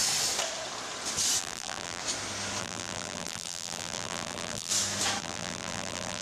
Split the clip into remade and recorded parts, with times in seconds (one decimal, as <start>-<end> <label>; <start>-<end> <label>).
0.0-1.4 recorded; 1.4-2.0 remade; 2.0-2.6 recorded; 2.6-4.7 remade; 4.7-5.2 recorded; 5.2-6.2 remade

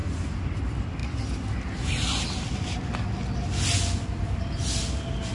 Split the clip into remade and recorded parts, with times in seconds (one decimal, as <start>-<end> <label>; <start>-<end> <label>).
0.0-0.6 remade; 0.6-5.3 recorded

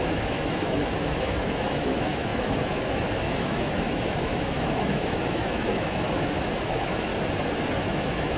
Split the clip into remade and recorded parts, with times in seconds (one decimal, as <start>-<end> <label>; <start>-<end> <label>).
0.0-7.1 remade; 7.1-7.8 recorded; 7.8-8.4 remade

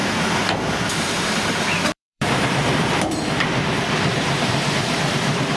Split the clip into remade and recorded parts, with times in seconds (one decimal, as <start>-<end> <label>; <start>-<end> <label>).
0.0-0.7 recorded; 0.7-5.6 remade